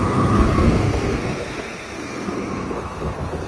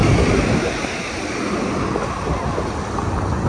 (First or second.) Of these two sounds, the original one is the second